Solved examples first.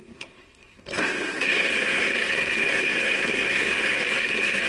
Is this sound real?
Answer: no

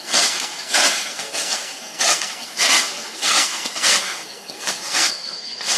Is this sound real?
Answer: no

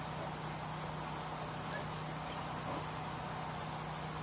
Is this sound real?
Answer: yes